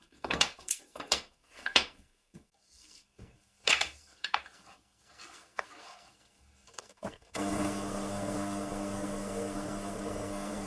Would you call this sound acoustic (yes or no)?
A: no